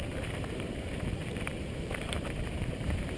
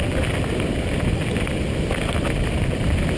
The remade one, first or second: first